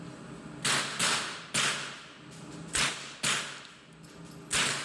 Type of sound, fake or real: real